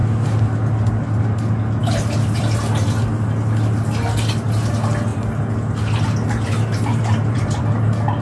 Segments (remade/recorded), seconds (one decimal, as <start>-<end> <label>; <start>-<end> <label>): 0.0-6.9 recorded; 6.9-7.6 remade; 7.6-8.2 recorded